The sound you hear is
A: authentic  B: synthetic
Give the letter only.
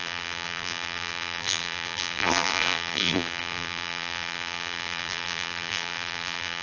B